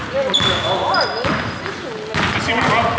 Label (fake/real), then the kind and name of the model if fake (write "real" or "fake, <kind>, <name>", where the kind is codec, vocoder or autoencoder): real